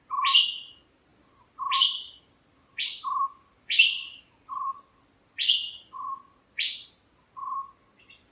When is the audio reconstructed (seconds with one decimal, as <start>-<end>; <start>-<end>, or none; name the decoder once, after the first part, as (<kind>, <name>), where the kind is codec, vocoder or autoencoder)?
1.1-4.3 (vocoder, BigVGAN v2)